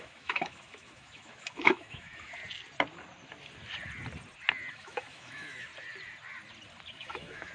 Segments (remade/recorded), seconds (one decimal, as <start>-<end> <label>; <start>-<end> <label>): 0.0-2.4 remade; 2.4-4.7 recorded; 4.7-5.7 remade; 5.7-6.9 recorded; 6.9-7.5 remade